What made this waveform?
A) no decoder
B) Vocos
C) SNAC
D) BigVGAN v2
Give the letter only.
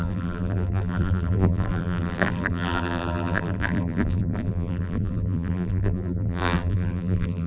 D